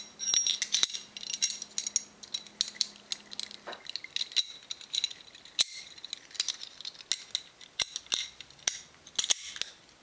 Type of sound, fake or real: real